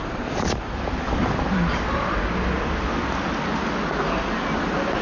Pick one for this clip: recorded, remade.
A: recorded